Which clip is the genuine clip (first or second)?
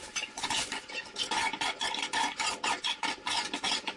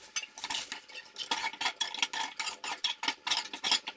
second